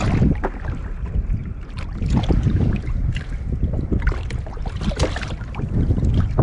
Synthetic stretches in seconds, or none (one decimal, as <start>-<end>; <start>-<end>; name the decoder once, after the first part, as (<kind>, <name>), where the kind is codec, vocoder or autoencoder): none